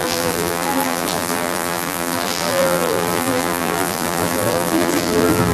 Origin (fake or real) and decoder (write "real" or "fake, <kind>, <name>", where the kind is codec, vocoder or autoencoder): fake, vocoder, BigVGAN v2